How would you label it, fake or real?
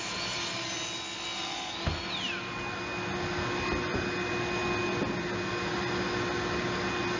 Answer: real